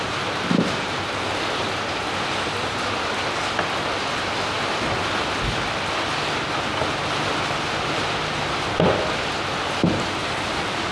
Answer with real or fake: real